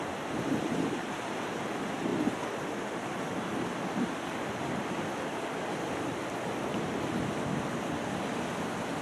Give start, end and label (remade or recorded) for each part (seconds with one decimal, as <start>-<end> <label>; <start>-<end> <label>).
0.0-9.0 recorded